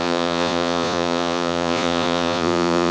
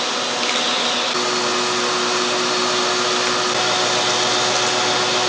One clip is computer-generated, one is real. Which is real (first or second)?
second